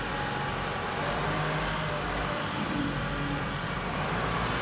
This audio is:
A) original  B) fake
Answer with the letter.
B